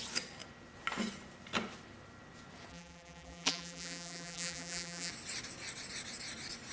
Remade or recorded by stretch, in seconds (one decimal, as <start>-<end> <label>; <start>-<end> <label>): 0.0-2.7 recorded; 2.7-5.1 remade; 5.1-6.7 recorded